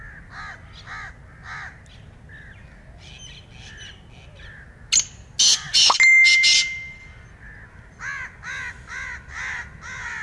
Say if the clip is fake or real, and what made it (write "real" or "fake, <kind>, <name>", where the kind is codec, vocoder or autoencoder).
real